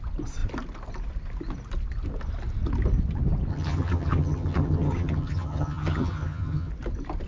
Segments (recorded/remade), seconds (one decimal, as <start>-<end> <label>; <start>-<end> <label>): 0.0-3.5 recorded; 3.5-6.7 remade; 6.7-7.3 recorded